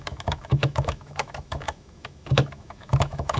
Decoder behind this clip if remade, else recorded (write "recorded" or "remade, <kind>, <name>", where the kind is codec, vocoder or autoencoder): remade, autoencoder, DAC-VAE